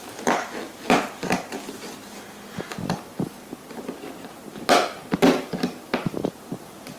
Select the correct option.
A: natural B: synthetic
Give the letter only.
A